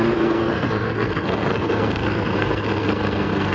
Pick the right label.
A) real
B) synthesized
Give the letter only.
B